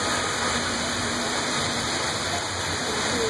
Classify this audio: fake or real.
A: real